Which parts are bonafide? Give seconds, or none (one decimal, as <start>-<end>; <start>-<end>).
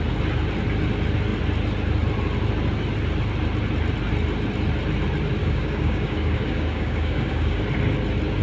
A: 0.0-5.4; 7.6-8.4